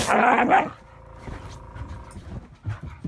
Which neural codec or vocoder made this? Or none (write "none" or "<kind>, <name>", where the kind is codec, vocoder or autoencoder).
none